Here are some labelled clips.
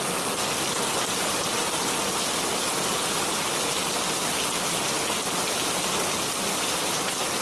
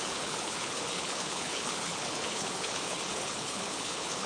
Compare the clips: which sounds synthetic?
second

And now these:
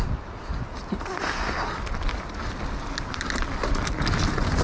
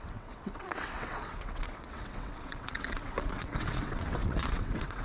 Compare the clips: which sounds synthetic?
second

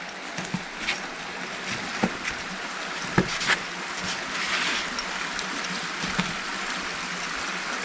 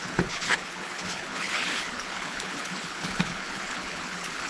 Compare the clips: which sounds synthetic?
second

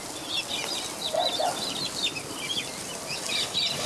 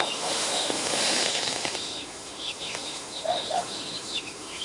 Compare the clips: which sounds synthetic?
second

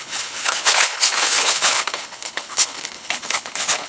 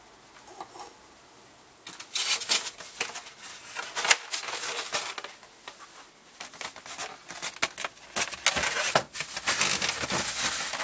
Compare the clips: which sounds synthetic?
first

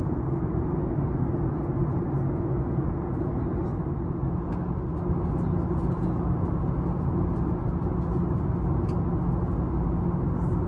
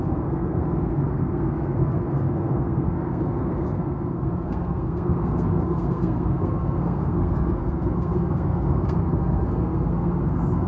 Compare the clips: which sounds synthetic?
second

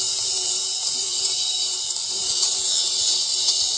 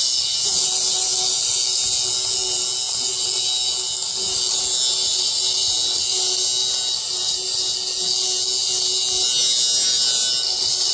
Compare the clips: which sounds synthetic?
first